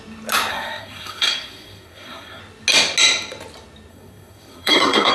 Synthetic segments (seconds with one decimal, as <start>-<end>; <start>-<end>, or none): 0.5-2.4; 3.9-5.1